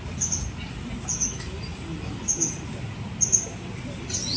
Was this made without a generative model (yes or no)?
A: yes